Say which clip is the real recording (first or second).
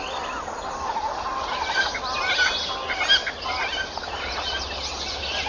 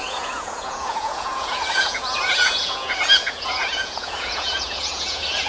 first